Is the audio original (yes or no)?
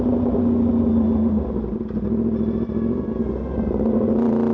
yes